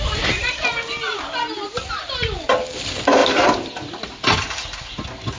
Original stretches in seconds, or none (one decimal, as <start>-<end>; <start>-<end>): 0.0-3.2; 3.9-5.4

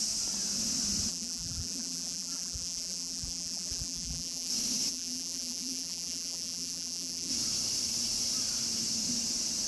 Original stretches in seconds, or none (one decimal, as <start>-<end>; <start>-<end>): 0.0-1.1; 4.5-4.9; 7.3-9.7

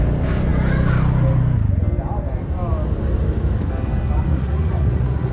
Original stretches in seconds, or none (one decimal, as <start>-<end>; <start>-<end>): 0.0-4.3